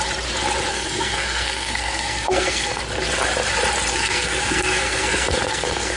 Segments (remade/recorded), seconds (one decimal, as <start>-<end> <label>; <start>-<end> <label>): 0.0-0.7 recorded; 0.7-2.8 remade; 2.8-3.9 recorded; 3.9-6.0 remade